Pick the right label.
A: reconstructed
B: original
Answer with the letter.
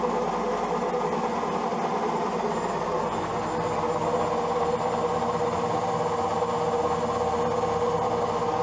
B